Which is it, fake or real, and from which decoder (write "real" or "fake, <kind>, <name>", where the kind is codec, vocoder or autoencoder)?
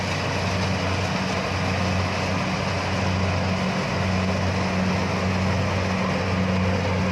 real